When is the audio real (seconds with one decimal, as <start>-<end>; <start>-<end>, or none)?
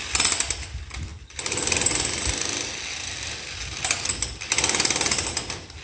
0.0-5.8